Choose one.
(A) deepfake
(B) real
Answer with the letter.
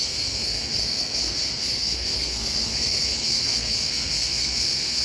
A